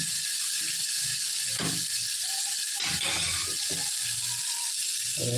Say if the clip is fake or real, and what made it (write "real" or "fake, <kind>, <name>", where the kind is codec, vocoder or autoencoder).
real